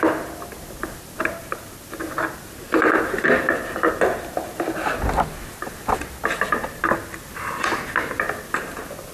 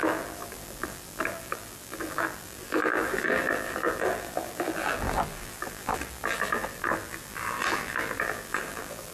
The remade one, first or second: second